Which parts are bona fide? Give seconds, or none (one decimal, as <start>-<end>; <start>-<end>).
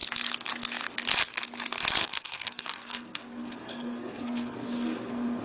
0.0-2.0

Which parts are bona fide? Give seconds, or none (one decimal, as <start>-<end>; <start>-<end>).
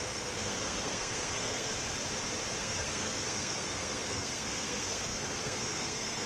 1.7-2.6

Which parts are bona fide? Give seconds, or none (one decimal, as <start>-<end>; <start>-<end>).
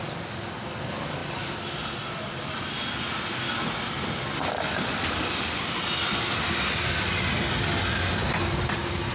0.0-9.1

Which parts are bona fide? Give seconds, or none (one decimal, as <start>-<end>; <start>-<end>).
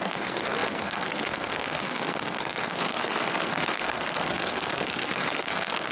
none